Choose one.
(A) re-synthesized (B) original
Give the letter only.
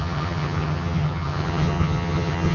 A